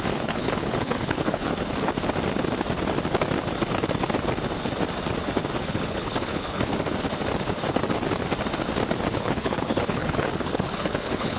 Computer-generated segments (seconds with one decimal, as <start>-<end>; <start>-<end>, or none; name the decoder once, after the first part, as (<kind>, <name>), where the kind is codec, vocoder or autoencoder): 0.0-1.5 (codec, HILCodec); 5.6-6.7; 9.1-11.4